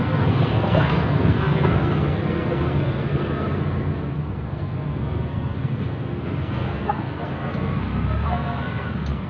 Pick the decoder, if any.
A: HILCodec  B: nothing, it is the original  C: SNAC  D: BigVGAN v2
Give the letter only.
C